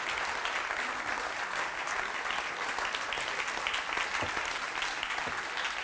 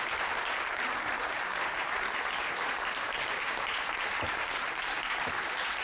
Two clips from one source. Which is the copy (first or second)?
second